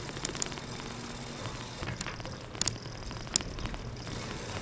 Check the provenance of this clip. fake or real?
real